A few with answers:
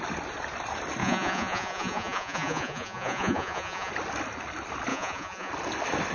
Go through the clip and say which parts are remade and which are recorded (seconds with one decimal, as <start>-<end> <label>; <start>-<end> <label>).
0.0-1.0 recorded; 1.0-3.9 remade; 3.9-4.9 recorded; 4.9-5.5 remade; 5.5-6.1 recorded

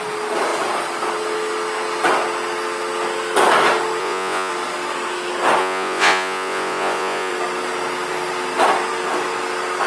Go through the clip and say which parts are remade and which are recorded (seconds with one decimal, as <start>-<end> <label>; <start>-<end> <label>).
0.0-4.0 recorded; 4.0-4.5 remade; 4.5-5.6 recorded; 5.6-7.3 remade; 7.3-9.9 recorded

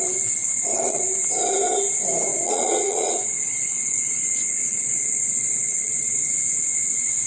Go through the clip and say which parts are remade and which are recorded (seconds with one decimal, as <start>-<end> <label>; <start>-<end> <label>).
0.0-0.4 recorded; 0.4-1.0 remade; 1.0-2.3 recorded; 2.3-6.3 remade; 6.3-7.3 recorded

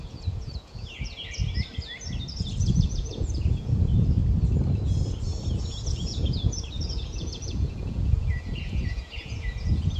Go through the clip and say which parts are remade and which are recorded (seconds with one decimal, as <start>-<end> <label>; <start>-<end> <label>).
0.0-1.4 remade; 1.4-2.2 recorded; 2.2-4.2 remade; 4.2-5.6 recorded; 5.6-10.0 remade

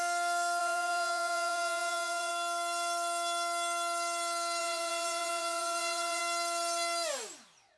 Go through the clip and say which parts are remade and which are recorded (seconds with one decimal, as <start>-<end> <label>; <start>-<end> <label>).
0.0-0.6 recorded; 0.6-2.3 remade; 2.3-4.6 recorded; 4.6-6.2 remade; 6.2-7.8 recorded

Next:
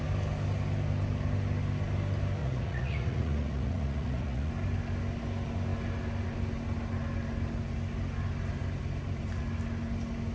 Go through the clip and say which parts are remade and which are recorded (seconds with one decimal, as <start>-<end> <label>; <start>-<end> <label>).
0.0-2.4 recorded; 2.4-4.5 remade; 4.5-10.3 recorded